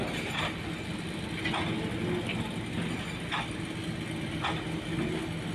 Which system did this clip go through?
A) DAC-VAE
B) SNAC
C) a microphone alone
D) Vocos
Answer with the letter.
C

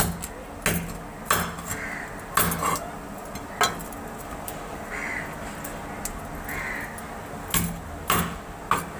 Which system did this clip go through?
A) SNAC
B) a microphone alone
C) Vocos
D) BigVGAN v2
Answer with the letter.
B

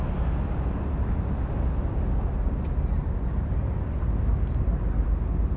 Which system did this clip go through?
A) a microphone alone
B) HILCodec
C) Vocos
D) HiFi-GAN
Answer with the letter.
A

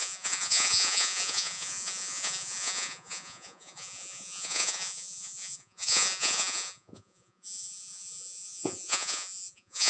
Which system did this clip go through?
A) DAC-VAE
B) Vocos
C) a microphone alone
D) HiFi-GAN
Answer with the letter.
B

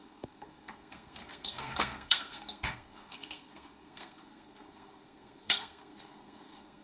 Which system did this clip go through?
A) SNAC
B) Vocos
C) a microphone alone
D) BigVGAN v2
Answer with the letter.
A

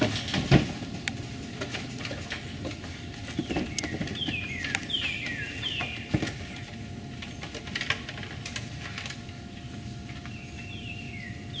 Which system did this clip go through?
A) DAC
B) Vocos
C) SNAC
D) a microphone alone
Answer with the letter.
D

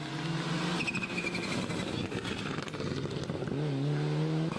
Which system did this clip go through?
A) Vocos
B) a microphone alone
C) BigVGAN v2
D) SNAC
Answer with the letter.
B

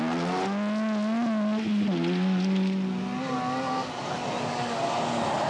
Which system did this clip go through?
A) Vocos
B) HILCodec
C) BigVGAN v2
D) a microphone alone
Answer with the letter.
D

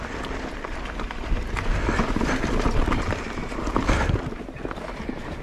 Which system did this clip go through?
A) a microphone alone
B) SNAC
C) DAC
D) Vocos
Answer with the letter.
A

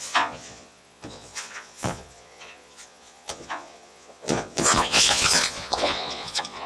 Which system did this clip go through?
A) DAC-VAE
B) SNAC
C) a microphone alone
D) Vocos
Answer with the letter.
D